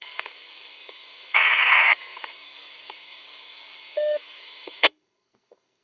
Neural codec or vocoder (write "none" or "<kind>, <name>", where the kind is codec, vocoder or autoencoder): codec, SNAC